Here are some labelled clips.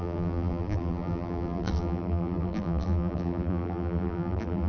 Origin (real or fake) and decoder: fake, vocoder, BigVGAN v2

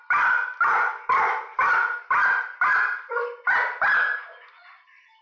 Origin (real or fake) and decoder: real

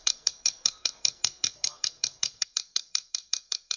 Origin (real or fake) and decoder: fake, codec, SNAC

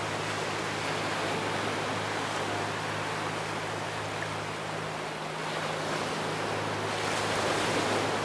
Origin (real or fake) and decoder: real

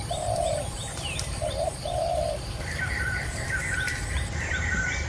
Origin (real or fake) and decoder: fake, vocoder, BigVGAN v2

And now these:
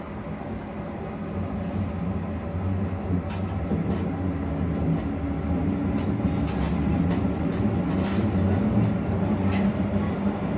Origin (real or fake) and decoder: real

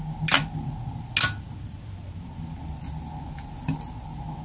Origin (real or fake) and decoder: real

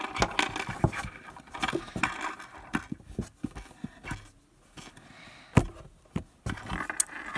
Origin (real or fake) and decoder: real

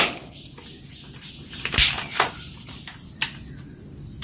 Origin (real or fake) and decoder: real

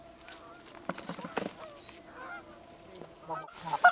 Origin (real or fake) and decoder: real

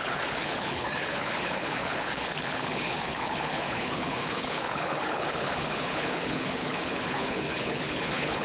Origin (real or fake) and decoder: fake, codec, HILCodec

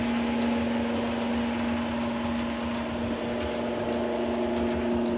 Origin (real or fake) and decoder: real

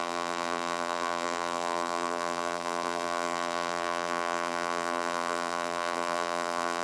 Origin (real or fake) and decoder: fake, vocoder, BigVGAN v2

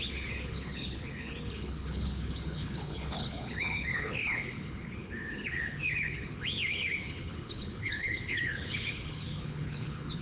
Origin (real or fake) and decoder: fake, codec, HILCodec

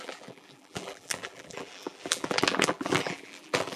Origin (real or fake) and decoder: fake, vocoder, BigVGAN v2